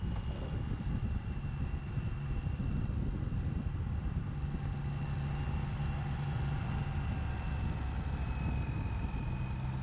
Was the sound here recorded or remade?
recorded